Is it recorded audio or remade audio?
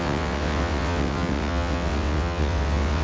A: remade